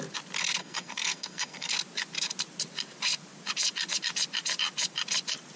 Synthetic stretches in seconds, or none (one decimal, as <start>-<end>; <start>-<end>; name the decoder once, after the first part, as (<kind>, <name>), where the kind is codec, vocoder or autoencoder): 0.6-1.7 (codec, SNAC)